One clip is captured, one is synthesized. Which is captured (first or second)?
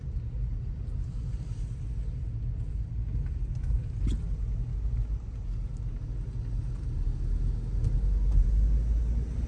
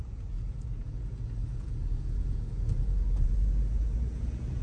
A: first